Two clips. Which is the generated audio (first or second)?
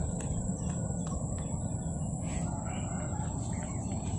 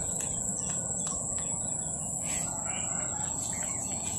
second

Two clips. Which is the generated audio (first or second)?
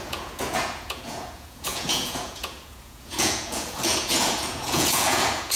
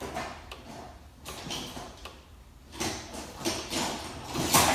first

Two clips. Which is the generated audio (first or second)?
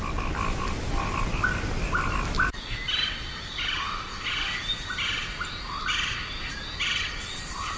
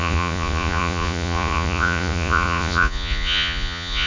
second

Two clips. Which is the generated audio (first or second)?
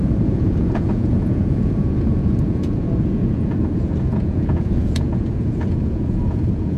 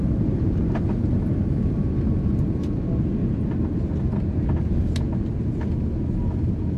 first